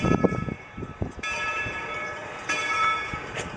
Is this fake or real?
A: fake